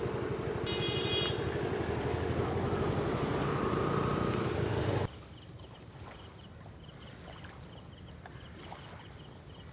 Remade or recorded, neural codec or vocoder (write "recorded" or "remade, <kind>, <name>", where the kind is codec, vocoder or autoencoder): recorded